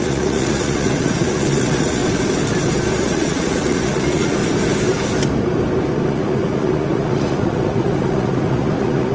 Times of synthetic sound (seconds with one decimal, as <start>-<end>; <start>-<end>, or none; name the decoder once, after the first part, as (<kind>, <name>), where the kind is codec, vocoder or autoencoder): 0.0-2.0 (vocoder, Vocos); 3.0-4.4; 6.1-9.1